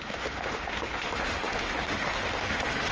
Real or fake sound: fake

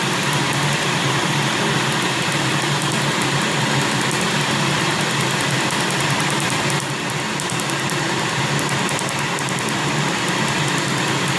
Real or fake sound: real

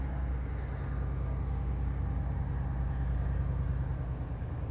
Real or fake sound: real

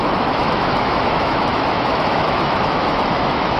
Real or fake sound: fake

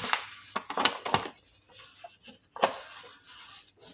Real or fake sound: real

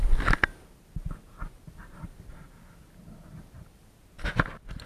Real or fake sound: real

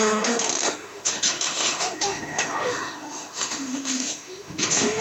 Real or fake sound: fake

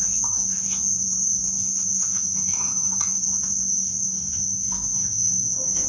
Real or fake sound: fake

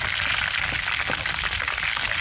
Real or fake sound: real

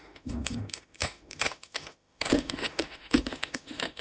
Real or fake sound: fake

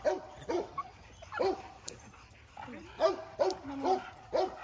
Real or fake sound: real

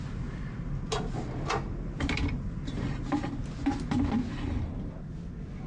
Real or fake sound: real